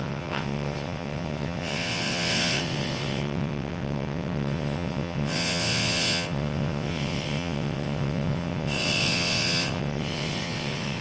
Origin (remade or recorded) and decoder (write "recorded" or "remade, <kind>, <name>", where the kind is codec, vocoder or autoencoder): remade, vocoder, WaveNeXt